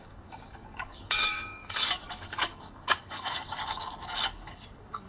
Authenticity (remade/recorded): remade